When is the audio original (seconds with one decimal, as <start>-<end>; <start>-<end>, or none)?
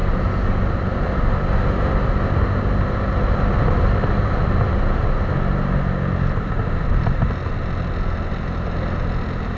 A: 0.0-9.6